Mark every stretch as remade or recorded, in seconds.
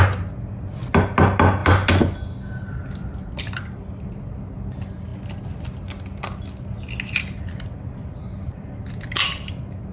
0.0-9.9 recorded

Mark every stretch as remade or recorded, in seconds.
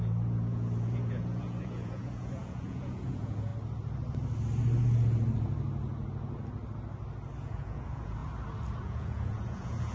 0.0-3.5 remade; 3.5-7.4 recorded; 7.4-8.2 remade; 8.2-8.8 recorded; 8.8-9.9 remade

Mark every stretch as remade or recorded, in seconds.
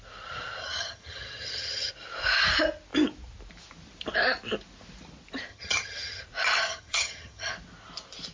0.0-0.6 recorded; 0.6-1.9 remade; 1.9-5.5 recorded; 5.5-6.2 remade; 6.2-6.7 recorded; 6.7-7.5 remade; 7.5-8.3 recorded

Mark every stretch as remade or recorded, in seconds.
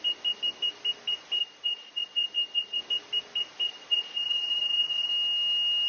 0.0-1.4 recorded; 1.4-2.8 remade; 2.8-3.7 recorded; 3.7-5.1 remade; 5.1-5.9 recorded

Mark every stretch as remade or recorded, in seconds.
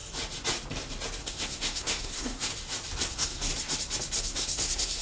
0.0-1.2 recorded; 1.2-2.5 remade; 2.5-3.1 recorded; 3.1-3.5 remade; 3.5-4.2 recorded; 4.2-5.0 remade